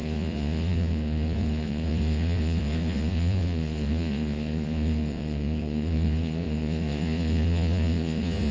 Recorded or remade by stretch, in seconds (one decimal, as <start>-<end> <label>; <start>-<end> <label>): 0.0-8.5 remade